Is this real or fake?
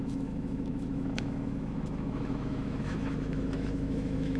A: fake